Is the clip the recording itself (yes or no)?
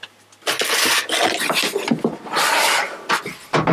yes